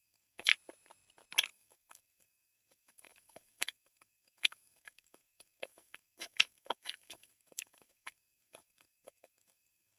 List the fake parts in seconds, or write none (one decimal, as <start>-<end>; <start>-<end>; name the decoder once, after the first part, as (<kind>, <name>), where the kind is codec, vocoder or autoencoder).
0.0-0.5 (codec, SNAC); 1.5-10.0